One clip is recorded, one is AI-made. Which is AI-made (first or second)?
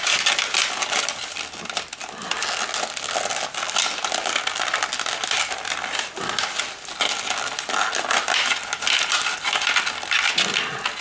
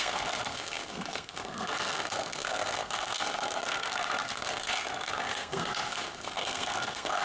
second